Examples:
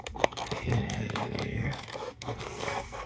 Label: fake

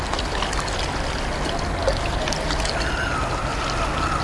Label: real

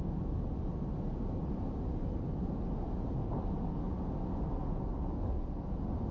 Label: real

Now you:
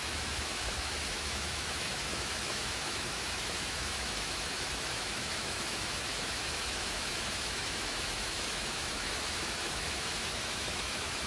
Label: fake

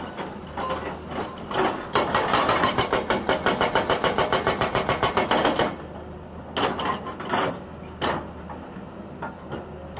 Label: real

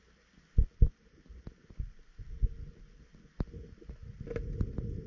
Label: real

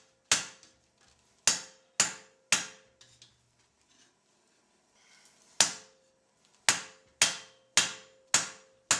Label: real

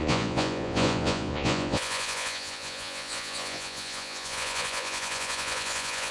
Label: fake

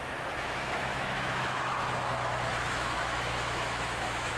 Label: fake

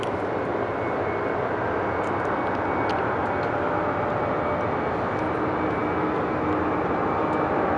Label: real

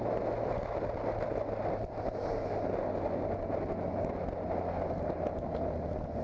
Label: real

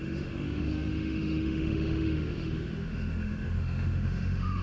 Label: fake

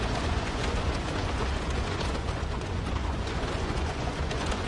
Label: fake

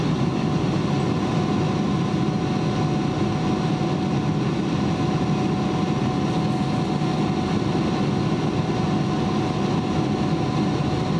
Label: real